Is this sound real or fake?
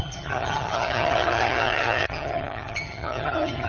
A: fake